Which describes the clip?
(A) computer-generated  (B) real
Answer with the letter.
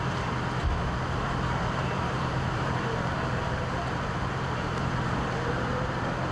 A